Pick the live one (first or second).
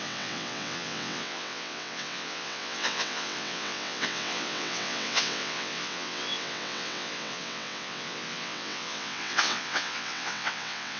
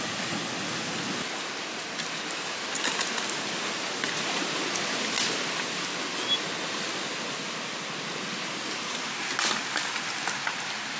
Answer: second